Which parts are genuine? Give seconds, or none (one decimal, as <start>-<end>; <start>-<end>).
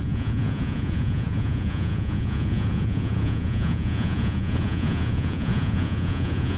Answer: none